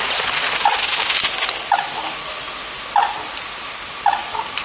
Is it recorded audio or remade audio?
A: recorded